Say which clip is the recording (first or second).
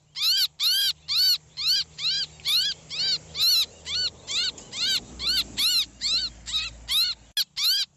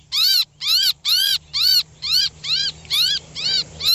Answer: first